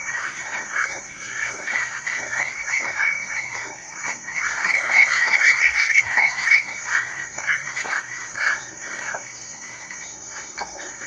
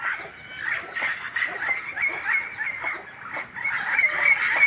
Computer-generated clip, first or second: first